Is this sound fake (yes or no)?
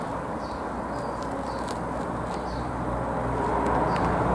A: no